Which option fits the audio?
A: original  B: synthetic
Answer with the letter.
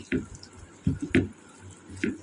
A